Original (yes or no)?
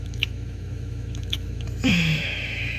no